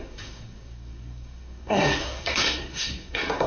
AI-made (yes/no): yes